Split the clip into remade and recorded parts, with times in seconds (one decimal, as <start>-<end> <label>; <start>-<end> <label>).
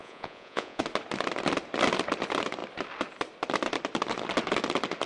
0.0-0.8 remade; 0.8-5.1 recorded